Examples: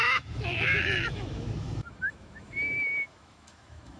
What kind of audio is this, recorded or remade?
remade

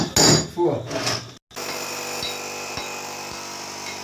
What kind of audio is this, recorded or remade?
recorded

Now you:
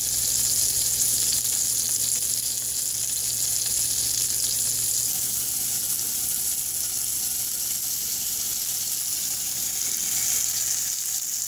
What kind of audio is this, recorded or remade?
recorded